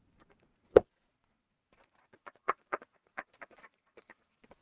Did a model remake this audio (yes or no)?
yes